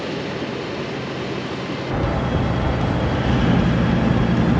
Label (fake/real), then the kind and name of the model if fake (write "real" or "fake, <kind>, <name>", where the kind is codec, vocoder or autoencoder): real